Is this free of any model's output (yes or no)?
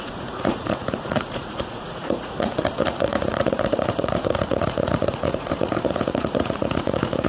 no